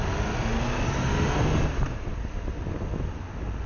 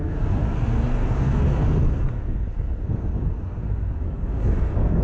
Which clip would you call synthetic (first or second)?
second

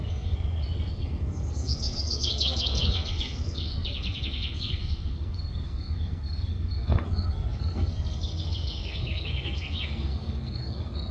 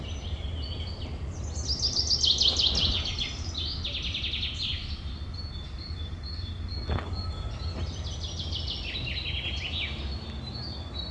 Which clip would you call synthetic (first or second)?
first